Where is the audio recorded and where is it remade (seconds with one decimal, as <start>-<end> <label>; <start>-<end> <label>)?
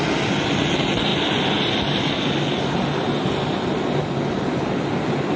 0.0-5.4 recorded